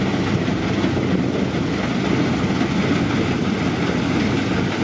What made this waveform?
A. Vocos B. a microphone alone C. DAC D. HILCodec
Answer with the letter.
B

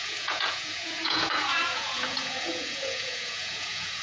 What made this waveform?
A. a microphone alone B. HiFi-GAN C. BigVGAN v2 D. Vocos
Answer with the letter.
D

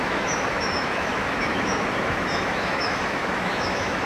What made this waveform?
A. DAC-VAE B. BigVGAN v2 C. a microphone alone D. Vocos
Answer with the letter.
A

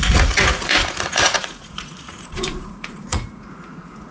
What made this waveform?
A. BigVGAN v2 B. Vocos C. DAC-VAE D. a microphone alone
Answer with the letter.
B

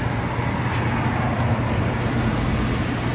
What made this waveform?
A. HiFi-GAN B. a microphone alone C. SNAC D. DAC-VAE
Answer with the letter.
B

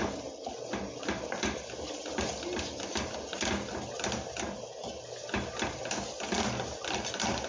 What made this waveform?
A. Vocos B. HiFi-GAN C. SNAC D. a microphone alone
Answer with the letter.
D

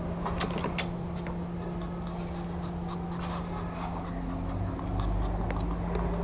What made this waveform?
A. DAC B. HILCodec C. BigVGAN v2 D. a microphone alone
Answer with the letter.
D